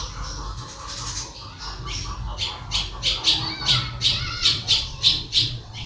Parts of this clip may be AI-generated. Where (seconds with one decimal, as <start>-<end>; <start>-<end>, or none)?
4.1-5.9